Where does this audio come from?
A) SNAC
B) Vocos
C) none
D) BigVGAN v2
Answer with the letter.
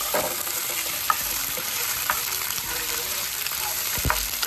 D